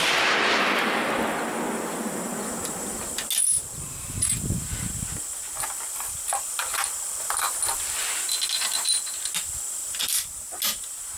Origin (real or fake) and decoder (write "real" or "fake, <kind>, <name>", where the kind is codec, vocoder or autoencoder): real